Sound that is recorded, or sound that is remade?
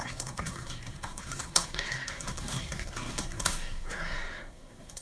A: remade